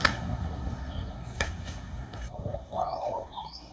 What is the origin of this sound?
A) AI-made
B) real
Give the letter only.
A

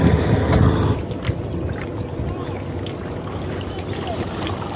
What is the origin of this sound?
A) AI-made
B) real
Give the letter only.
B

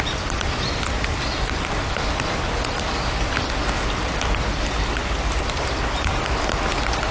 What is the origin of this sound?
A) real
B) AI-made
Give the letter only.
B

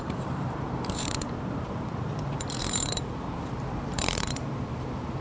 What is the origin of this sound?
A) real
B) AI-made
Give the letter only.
B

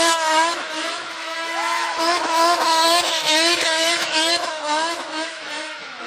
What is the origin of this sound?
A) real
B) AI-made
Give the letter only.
B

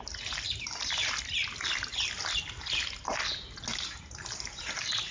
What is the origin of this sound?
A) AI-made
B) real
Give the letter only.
B